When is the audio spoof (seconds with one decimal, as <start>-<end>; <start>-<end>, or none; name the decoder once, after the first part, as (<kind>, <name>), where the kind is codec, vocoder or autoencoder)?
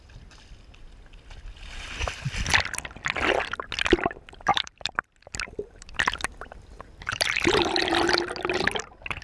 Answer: 4.5-6.1 (vocoder, BigVGAN v2); 7.1-7.8